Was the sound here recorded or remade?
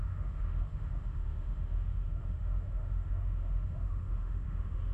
remade